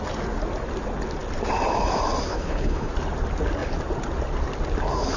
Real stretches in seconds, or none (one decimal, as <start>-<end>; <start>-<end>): 0.0-2.3; 2.9-5.2